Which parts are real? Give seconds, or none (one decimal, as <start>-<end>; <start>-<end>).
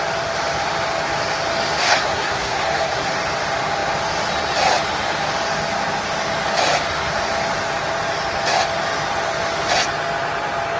0.0-1.8; 3.1-10.8